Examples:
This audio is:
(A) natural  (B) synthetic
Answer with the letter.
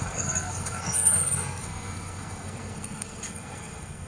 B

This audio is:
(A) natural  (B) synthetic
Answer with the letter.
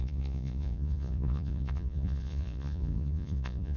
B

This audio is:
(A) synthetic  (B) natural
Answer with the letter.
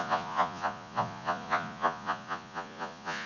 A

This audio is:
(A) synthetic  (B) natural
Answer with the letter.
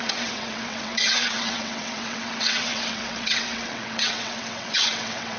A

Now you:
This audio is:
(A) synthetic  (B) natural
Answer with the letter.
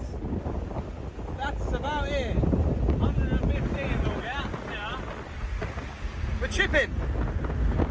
B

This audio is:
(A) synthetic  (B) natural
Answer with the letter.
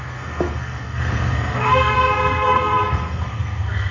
A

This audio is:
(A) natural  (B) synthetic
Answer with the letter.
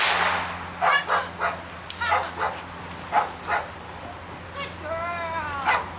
A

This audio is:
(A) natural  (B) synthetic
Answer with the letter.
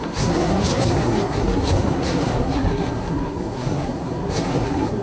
B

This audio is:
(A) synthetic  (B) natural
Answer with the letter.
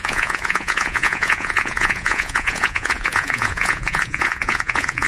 A